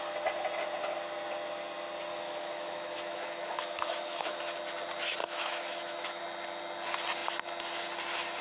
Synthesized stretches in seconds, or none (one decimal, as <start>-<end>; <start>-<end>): 2.1-4.4; 5.2-6.2